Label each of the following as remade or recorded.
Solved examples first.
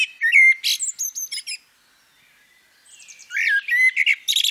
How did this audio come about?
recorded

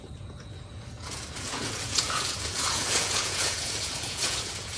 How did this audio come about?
remade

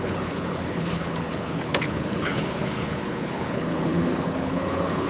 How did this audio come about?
remade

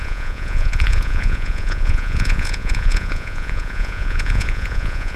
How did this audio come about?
remade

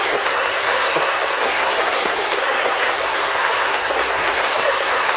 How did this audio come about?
remade